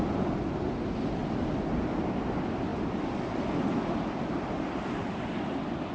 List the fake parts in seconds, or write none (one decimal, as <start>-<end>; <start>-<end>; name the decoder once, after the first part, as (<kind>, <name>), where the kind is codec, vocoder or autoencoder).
none